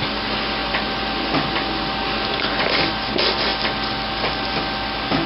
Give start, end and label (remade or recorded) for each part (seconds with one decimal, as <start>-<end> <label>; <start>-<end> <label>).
0.0-5.3 recorded